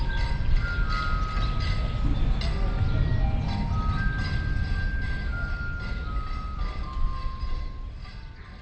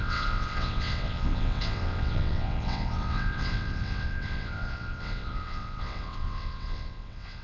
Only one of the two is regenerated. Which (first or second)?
second